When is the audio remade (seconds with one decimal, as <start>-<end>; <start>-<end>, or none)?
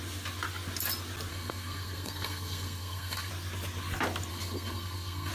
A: 1.3-3.3; 4.3-5.3